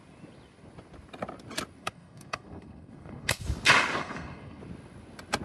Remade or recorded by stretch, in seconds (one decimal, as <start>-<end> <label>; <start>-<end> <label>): 0.0-1.8 recorded; 1.8-3.4 remade; 3.4-4.0 recorded; 4.0-4.6 remade; 4.6-5.4 recorded